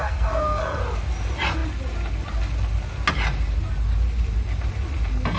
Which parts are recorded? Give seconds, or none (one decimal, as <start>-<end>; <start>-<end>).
0.8-5.4